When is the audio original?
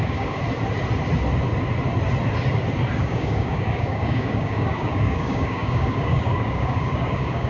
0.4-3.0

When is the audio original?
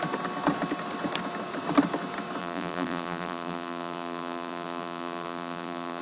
0.0-2.4